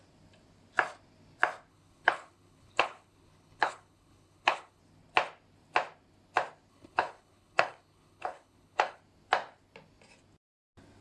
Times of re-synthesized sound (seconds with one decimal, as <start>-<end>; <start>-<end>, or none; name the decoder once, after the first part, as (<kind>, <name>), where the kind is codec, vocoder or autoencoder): 1.7-4.8 (codec, HILCodec); 6.7-9.0

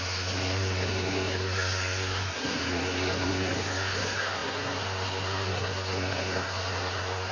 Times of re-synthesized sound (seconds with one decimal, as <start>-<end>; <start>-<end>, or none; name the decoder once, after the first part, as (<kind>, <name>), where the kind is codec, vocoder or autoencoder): 0.0-7.3 (codec, SNAC)

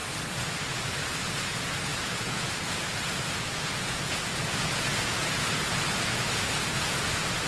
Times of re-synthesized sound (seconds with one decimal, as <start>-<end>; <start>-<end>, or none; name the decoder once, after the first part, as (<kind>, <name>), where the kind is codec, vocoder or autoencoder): 0.7-7.5 (vocoder, Vocos)